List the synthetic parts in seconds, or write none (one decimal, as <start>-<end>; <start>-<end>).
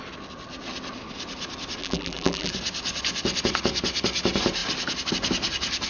1.8-2.5